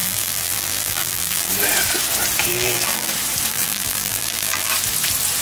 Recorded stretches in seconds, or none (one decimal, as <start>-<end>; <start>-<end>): 1.5-2.5; 3.1-3.5; 4.7-5.4